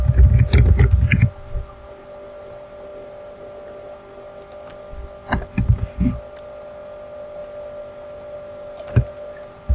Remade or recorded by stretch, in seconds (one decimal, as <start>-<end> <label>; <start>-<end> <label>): 0.0-9.7 recorded